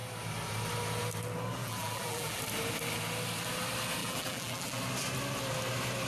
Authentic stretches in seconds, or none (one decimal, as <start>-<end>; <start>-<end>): 0.0-1.6; 2.4-4.0; 4.8-6.1